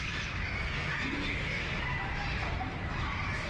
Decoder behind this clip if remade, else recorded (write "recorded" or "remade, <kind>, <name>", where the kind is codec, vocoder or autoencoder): recorded